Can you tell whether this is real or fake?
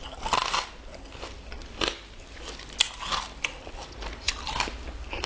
real